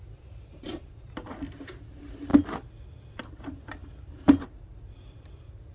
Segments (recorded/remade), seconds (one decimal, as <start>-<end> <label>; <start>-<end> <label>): 0.0-2.3 remade; 2.3-3.2 recorded; 3.2-5.7 remade